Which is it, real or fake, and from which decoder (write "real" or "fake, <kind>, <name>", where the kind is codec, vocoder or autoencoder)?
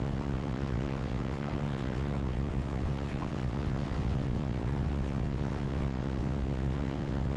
fake, vocoder, WaveNeXt